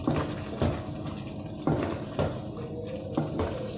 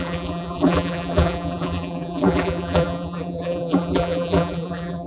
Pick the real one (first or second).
first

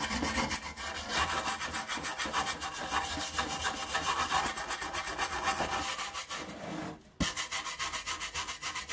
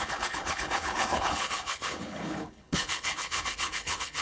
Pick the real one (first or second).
first